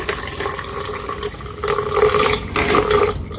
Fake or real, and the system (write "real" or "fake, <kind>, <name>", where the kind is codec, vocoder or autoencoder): real